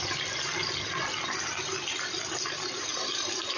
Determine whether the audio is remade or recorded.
recorded